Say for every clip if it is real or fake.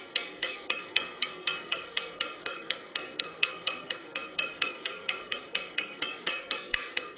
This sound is fake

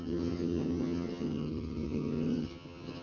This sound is fake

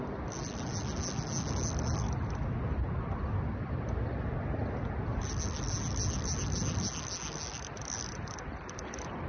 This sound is real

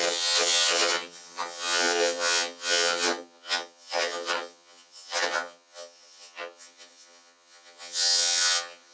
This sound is fake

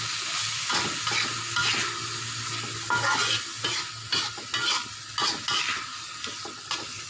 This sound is real